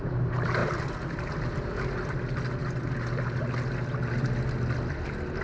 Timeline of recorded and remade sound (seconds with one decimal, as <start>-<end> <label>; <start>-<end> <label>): 0.0-5.4 recorded